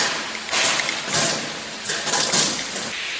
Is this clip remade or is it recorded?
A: recorded